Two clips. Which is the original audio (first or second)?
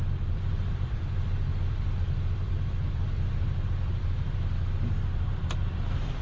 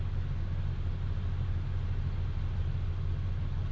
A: second